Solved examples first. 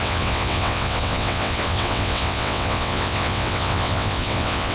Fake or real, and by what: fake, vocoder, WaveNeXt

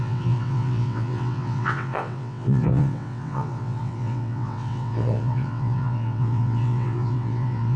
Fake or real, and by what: fake, vocoder, WaveNeXt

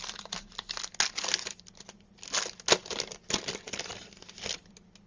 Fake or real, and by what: real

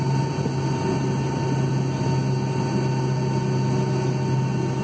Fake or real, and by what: real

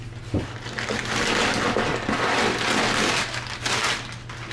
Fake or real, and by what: real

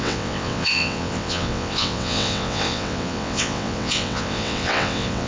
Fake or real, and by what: fake, vocoder, WaveNeXt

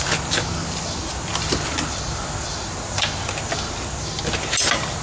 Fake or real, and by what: real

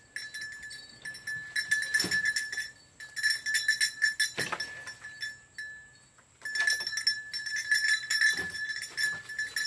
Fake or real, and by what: real